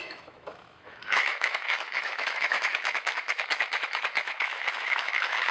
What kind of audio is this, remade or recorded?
remade